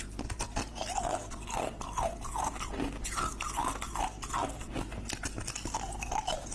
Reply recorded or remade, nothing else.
recorded